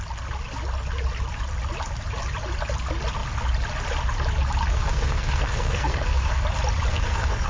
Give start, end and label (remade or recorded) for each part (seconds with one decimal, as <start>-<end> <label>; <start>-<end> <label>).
0.0-4.7 recorded; 4.7-6.4 remade; 6.4-6.9 recorded; 6.9-7.5 remade